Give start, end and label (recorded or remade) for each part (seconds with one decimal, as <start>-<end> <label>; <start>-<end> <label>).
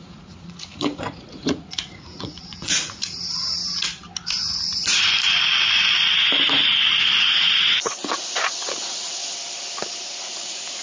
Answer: 0.0-3.6 remade; 3.6-6.9 recorded; 6.9-9.2 remade; 9.2-10.0 recorded; 10.0-10.8 remade